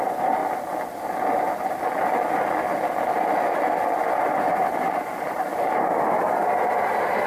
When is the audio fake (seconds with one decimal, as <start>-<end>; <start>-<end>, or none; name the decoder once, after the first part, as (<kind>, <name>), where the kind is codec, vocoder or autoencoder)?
0.0-0.4 (vocoder, BigVGAN v2); 4.2-5.5; 6.1-7.3